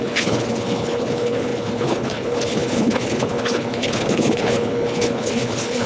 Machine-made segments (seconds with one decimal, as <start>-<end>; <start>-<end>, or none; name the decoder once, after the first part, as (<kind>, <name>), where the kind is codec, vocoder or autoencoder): 0.0-5.9 (codec, HILCodec)